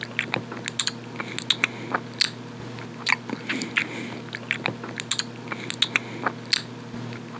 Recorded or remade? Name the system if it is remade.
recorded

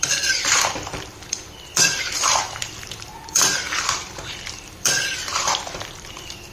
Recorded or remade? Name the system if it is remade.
remade, vocoder, BigVGAN v2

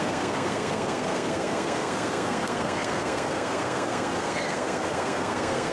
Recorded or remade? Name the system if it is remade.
remade, codec, SNAC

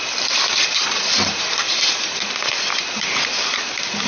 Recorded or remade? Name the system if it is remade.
recorded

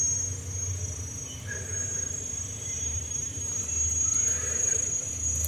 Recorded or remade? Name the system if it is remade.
recorded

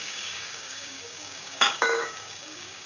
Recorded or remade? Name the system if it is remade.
remade, codec, DAC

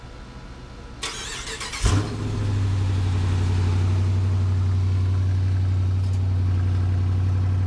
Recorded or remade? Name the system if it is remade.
recorded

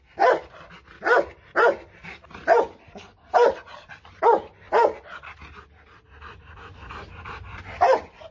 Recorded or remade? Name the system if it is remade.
recorded